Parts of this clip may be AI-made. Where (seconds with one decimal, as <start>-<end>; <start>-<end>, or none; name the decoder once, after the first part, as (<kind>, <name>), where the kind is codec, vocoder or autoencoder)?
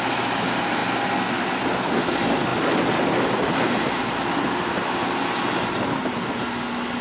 none